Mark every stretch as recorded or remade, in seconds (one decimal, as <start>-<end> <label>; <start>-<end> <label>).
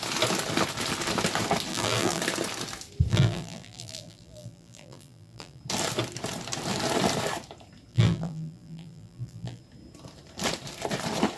0.0-1.7 recorded; 1.7-2.2 remade; 2.2-3.1 recorded; 3.1-5.6 remade; 5.6-7.9 recorded; 7.9-9.6 remade; 9.6-11.4 recorded